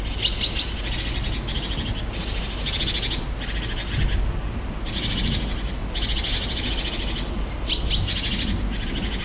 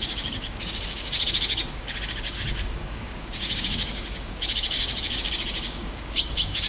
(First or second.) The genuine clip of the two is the first